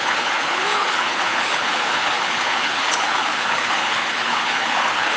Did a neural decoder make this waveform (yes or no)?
yes